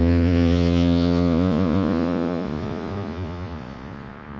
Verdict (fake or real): fake